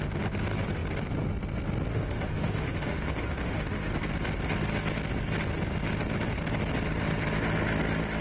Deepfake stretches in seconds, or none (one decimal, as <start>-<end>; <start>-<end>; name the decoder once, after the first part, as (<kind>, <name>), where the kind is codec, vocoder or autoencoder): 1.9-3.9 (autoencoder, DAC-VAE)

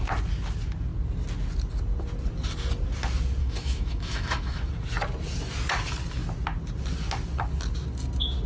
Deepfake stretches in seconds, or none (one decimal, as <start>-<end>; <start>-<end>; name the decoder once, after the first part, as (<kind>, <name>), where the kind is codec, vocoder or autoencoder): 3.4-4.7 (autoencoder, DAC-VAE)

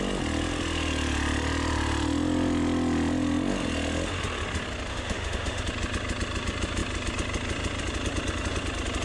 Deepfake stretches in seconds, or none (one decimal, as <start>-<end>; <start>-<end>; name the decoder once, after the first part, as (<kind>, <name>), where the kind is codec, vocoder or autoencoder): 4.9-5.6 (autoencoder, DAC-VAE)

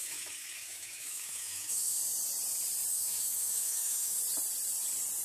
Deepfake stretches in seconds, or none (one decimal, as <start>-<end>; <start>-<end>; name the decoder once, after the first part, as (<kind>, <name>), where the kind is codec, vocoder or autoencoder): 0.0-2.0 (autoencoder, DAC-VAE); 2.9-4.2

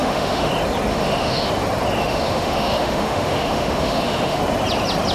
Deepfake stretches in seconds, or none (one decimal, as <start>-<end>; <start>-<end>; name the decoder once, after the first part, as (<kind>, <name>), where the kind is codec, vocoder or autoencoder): 0.0-0.5 (autoencoder, DAC-VAE); 0.9-1.5; 2.0-4.4